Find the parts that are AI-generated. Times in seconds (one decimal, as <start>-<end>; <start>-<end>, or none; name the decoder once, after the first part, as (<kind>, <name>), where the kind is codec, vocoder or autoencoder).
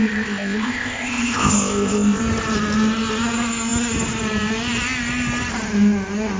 0.0-2.2 (codec, ZipCodec)